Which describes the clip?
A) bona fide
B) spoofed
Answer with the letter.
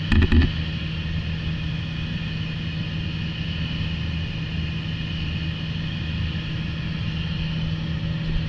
A